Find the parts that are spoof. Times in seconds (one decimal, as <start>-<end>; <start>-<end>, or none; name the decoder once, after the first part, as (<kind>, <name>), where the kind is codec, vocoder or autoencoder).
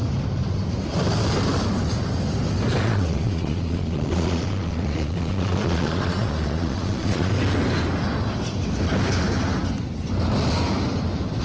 2.8-7.3 (vocoder, Vocos)